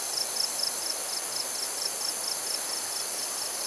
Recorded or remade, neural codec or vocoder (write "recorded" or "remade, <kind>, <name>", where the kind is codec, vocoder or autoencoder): recorded